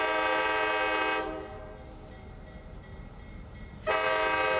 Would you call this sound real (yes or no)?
yes